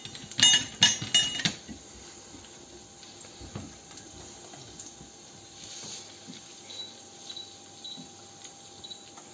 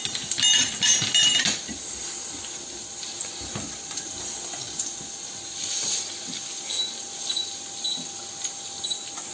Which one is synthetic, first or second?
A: second